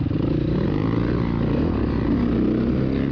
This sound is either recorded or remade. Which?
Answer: recorded